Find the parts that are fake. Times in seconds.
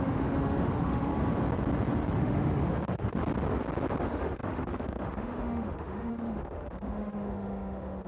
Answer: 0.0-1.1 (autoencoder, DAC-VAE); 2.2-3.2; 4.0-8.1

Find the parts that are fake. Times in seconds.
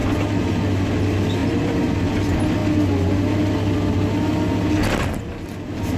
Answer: none